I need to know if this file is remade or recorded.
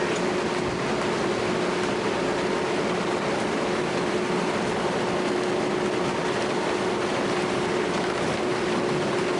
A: recorded